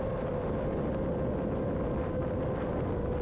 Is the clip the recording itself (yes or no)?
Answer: yes